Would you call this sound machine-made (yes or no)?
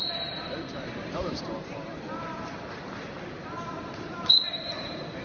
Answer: yes